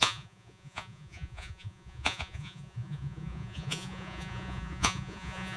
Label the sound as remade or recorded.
remade